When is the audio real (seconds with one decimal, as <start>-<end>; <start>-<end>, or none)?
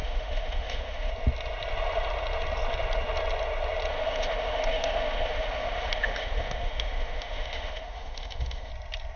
1.1-3.9; 8.7-9.2